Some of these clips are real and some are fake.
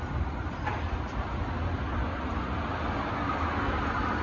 real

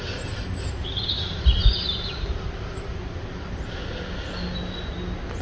real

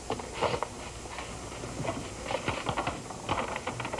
real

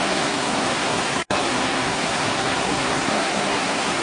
fake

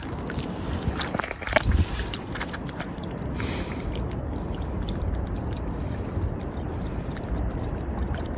fake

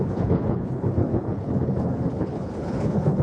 fake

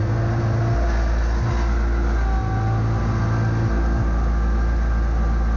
real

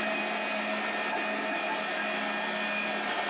real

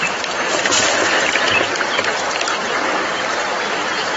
fake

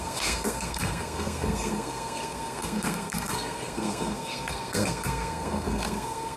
fake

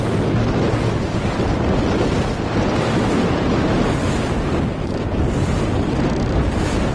real